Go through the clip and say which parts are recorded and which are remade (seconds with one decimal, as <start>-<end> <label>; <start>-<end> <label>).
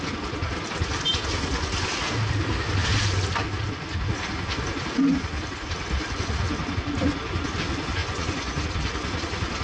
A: 0.0-8.0 recorded; 8.0-8.6 remade; 8.6-9.6 recorded